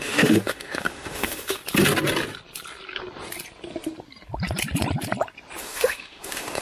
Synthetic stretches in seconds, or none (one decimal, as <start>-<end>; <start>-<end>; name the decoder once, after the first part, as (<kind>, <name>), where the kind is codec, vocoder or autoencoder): 0.0-1.6 (autoencoder, DAC-VAE); 5.6-6.6